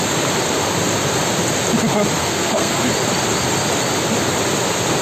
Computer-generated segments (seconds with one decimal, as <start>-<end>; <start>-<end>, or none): 2.2-2.9